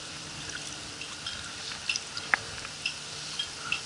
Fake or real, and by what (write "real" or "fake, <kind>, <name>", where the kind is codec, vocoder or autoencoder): fake, vocoder, BigVGAN v2